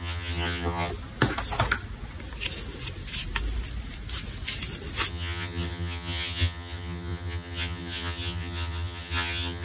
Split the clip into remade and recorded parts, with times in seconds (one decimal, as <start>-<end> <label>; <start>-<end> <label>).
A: 0.0-0.9 remade; 0.9-5.1 recorded; 5.1-9.6 remade